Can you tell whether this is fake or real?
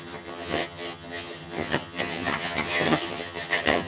fake